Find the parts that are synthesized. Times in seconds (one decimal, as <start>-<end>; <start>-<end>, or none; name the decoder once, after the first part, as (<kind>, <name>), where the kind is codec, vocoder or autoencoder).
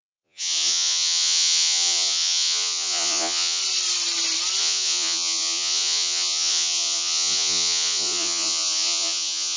0.0-3.6 (vocoder, Vocos); 4.6-9.6